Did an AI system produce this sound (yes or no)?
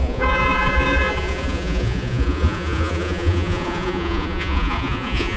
yes